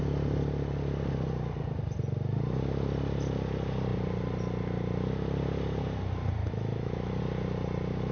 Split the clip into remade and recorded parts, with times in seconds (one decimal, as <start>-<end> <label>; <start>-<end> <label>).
0.0-6.4 recorded; 6.4-7.2 remade; 7.2-8.1 recorded